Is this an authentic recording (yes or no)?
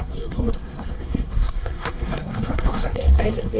no